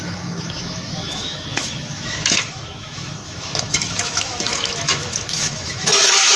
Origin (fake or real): fake